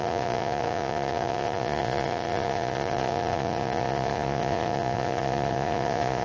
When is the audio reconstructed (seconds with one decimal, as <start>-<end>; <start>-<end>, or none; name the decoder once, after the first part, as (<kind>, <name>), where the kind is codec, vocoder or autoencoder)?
0.0-6.2 (vocoder, Vocos)